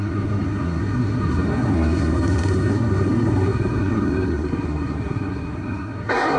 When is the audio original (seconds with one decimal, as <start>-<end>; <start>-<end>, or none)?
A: none